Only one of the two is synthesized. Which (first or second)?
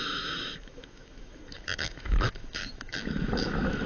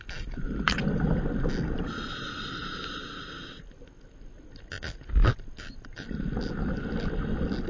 first